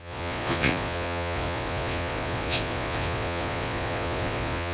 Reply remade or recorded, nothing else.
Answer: remade